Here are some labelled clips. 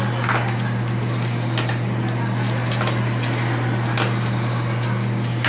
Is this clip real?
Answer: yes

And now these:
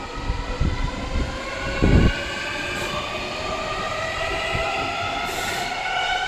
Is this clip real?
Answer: yes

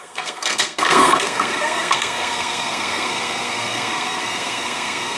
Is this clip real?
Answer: no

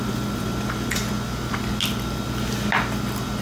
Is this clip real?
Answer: yes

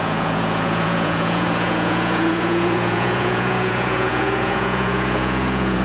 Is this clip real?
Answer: no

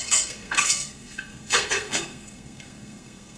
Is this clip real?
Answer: no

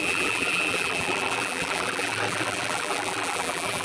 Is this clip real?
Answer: no